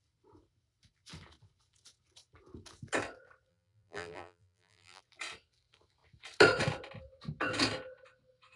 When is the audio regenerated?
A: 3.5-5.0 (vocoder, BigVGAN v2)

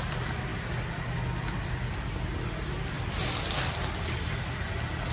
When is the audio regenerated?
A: none